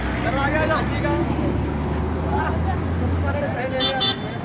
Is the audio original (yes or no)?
yes